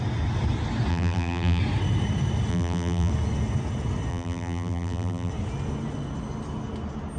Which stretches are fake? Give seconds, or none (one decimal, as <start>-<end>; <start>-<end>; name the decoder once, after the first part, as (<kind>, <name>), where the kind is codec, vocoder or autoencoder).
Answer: 0.9-1.6 (vocoder, BigVGAN v2); 2.5-3.1; 4.1-5.3